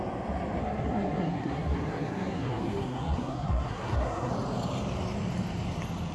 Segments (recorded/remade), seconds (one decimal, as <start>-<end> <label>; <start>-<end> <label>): 0.0-0.6 recorded; 0.6-4.3 remade; 4.3-6.1 recorded